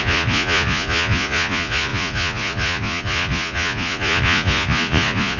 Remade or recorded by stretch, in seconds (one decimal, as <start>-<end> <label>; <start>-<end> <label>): 0.0-5.4 remade